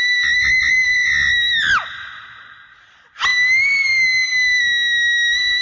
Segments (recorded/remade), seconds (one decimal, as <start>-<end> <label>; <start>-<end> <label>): 0.0-5.6 recorded